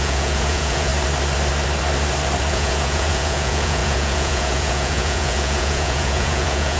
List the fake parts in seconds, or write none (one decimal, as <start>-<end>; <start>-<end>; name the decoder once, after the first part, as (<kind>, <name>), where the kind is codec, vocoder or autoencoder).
0.0-0.9 (vocoder, Vocos); 2.5-6.8